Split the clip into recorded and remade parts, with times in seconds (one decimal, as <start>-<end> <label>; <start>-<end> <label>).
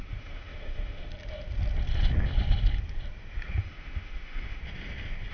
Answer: 0.0-1.1 remade; 1.1-3.6 recorded; 3.6-4.6 remade; 4.6-5.3 recorded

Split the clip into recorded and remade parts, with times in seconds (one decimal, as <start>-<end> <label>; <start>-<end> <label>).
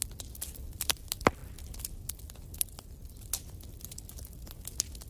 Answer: 0.0-5.1 recorded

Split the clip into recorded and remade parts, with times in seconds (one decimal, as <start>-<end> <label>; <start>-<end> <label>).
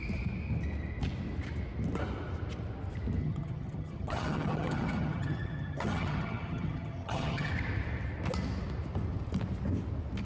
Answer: 0.0-3.2 recorded; 3.2-7.5 remade; 7.5-10.3 recorded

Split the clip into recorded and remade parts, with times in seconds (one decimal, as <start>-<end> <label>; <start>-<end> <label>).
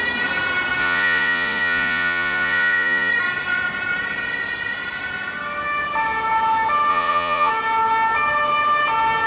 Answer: 0.0-0.8 recorded; 0.8-3.1 remade; 3.1-6.9 recorded; 6.9-7.5 remade; 7.5-9.3 recorded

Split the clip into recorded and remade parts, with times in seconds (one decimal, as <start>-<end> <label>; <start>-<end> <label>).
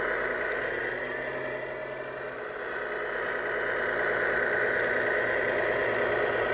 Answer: 0.0-6.5 recorded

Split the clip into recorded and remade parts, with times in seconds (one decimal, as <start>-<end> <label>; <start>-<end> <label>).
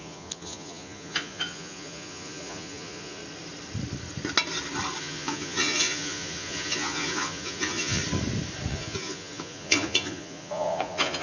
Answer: 0.0-3.2 remade; 3.2-5.0 recorded; 5.0-8.0 remade; 8.0-8.7 recorded; 8.7-11.2 remade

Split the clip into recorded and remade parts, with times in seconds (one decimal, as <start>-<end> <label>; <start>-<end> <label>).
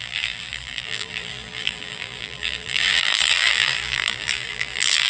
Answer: 0.0-5.1 remade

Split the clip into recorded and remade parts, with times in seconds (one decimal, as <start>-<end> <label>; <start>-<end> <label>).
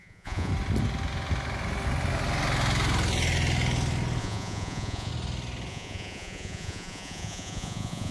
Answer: 0.0-0.5 remade; 0.5-4.2 recorded; 4.2-5.1 remade; 5.1-5.7 recorded; 5.7-8.1 remade